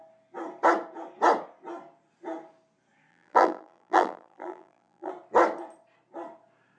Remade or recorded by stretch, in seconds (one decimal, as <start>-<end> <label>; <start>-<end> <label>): 0.0-3.1 recorded; 3.1-5.1 remade; 5.1-6.8 recorded